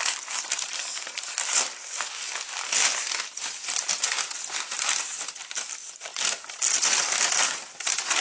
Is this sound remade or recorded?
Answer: recorded